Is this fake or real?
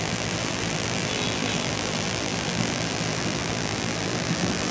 fake